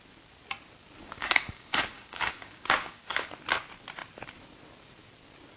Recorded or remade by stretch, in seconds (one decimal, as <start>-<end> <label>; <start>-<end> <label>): 0.0-1.0 recorded; 1.0-3.3 remade; 3.3-5.6 recorded